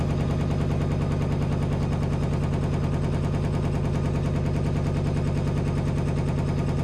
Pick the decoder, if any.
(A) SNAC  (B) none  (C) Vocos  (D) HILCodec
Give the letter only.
B